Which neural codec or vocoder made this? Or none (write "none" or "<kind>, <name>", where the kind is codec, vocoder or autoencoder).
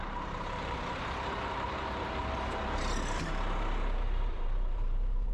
vocoder, BigVGAN v2